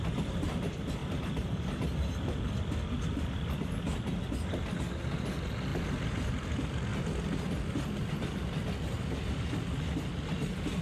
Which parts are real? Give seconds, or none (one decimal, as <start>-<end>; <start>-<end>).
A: 0.0-10.8